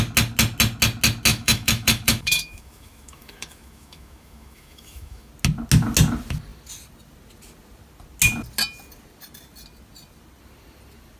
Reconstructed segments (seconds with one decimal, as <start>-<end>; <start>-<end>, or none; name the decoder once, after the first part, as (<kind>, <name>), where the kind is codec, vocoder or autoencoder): 1.3-5.3 (autoencoder, DAC-VAE)